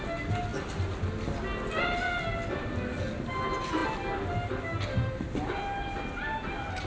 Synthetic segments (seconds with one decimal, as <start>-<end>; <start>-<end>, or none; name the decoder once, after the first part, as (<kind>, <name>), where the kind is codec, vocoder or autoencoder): none